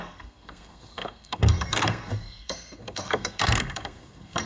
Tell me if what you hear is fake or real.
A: fake